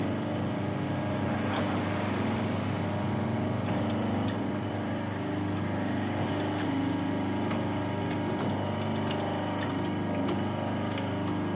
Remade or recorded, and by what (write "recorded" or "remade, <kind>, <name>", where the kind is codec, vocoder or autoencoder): recorded